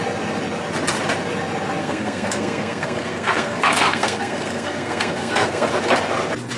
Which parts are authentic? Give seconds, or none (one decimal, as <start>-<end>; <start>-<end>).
0.0-1.8; 5.7-6.6